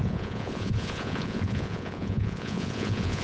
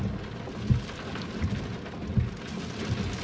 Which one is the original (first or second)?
second